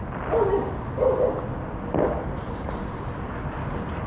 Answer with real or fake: real